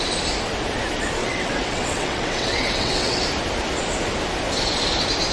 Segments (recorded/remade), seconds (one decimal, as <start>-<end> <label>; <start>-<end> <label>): 0.0-1.2 recorded; 1.2-3.2 remade; 3.2-5.3 recorded